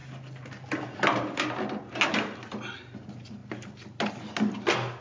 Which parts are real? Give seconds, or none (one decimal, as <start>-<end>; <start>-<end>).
0.0-5.0